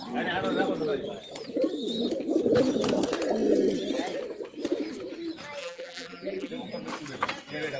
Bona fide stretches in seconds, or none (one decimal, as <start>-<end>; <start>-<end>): 0.0-5.6; 6.5-7.8